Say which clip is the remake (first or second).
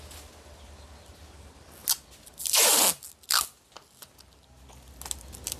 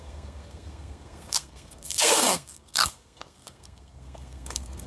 second